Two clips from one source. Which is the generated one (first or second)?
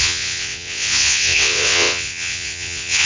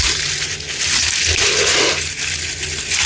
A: first